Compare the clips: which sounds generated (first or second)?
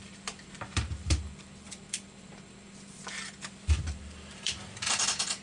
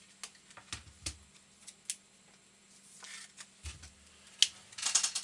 first